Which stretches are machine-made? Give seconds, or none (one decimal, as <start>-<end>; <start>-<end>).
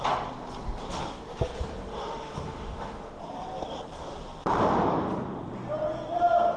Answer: 1.8-3.2